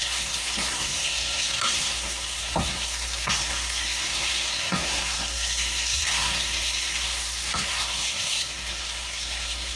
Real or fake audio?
fake